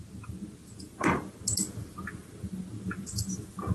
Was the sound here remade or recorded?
recorded